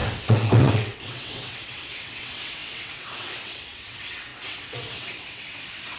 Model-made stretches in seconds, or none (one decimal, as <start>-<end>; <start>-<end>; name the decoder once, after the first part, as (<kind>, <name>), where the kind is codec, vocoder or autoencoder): 0.0-6.0 (vocoder, WaveNeXt)